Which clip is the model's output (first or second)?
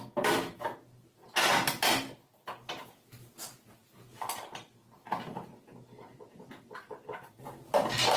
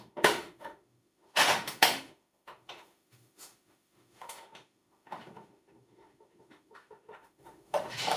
second